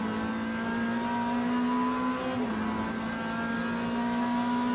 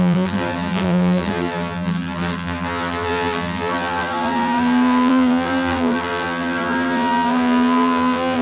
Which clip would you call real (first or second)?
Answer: first